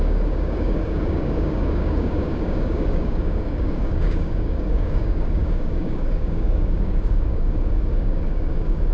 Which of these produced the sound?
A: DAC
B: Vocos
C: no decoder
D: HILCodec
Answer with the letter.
A